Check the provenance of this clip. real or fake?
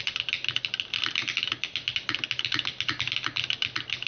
real